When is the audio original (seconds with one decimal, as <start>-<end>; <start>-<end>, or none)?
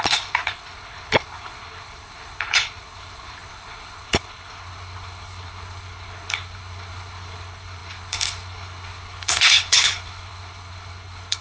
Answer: none